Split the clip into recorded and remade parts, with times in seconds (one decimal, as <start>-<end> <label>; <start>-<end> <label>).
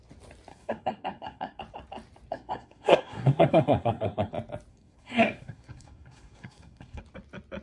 0.0-0.5 recorded; 0.5-1.6 remade; 1.6-2.3 recorded; 2.3-4.3 remade; 4.3-4.7 recorded; 4.7-7.0 remade; 7.0-7.6 recorded